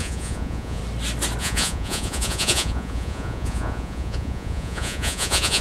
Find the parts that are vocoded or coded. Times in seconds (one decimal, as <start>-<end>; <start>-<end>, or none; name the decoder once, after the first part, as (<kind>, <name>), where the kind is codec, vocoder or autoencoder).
0.0-0.8 (vocoder, Vocos); 1.4-5.6